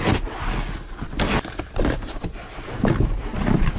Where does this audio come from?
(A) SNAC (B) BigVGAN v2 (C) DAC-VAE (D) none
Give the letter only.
D